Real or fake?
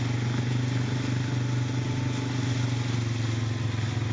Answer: real